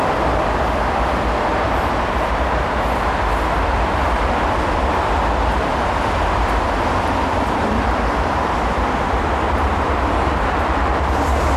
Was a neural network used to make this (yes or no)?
yes